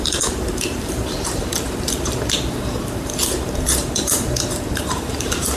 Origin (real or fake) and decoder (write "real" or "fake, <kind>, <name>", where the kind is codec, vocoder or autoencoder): fake, vocoder, BigVGAN v2